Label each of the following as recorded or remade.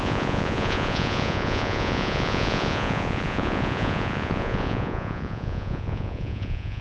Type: remade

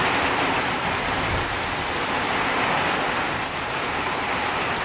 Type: recorded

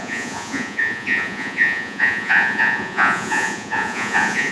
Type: remade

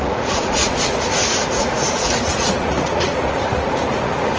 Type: remade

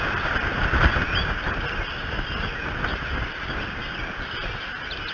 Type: recorded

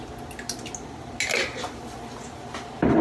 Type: recorded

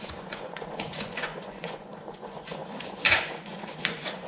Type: remade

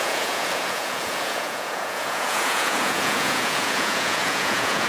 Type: remade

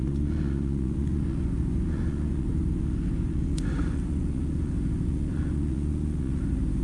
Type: remade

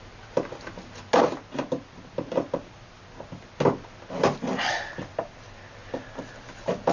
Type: recorded